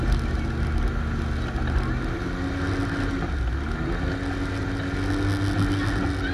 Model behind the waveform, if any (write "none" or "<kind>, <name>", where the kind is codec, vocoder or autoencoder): none